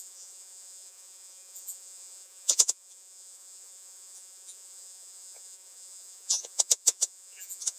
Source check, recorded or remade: remade